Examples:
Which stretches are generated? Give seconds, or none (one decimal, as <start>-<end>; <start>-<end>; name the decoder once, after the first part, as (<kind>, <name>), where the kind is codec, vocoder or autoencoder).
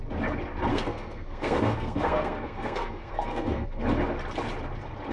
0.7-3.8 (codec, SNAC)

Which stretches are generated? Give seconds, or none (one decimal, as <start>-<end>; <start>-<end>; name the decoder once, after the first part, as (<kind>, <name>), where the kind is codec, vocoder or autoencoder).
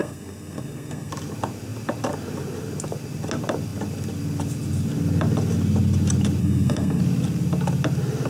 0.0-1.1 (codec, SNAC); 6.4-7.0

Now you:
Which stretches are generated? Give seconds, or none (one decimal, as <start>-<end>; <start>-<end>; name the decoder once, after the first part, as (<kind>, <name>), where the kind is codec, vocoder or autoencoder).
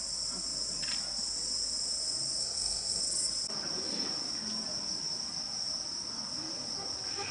2.4-3.0 (codec, SNAC)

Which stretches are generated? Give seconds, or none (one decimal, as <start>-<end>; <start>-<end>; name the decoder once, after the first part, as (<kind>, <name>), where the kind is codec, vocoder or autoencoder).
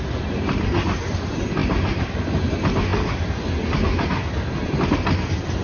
none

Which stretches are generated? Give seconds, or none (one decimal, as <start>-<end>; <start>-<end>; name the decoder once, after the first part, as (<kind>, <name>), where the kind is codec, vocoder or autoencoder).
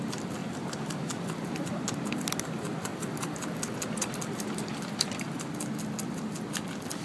none